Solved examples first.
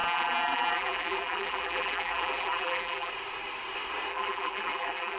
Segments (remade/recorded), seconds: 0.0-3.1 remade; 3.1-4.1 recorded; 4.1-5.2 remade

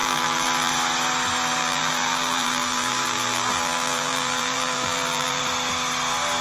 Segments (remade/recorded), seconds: 0.0-0.7 remade; 0.7-1.6 recorded; 1.6-5.4 remade; 5.4-6.4 recorded

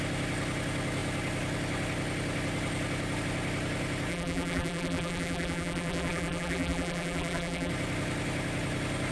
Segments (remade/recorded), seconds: 0.0-4.1 recorded; 4.1-7.7 remade; 7.7-9.1 recorded